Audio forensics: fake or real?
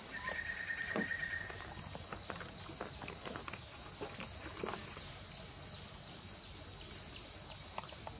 real